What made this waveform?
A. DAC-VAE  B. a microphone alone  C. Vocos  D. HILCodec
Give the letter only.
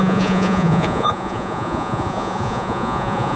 C